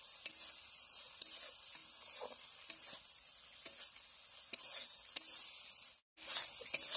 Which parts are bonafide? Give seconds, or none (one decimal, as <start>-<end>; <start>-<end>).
0.0-7.0

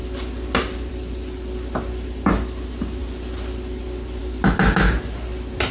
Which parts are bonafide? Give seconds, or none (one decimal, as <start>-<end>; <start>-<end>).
0.0-5.7

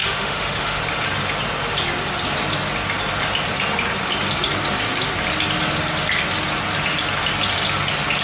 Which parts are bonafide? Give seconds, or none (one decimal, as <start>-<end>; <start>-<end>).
0.8-8.2

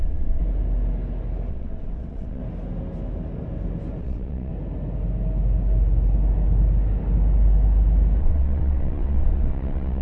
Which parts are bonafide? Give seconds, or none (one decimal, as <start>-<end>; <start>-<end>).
0.4-1.5; 2.4-4.0; 4.5-8.2